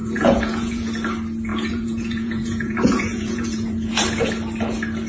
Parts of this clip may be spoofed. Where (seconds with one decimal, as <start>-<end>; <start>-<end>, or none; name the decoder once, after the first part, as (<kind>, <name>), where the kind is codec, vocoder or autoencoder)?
0.0-0.9 (vocoder, Vocos); 1.5-4.0

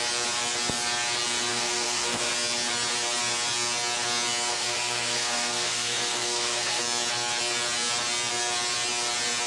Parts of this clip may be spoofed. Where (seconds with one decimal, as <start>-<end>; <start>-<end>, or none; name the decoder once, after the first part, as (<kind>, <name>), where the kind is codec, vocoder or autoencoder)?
1.5-2.3 (codec, SNAC); 4.5-6.8

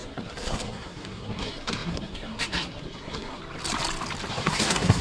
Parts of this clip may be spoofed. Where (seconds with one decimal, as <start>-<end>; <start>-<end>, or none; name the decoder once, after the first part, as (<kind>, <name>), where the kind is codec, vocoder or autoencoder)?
0.0-3.4 (codec, SNAC); 4.3-5.0

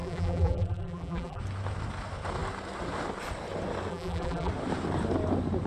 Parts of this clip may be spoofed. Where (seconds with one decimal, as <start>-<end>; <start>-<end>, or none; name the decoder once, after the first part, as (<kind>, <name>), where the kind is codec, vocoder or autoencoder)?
0.0-1.4 (vocoder, BigVGAN v2); 3.9-4.5